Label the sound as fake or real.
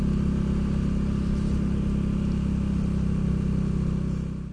real